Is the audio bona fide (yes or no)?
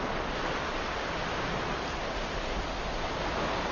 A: yes